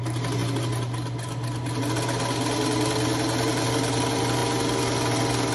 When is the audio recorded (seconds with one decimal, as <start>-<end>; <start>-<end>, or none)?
0.0-5.5